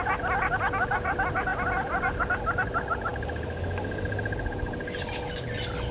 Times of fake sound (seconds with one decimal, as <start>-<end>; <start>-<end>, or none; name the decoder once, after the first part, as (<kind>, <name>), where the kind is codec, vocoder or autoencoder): none